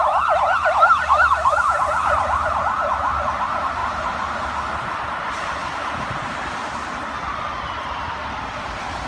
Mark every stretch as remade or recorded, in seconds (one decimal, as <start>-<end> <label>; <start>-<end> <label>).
0.0-3.8 remade; 3.8-4.7 recorded; 4.7-9.1 remade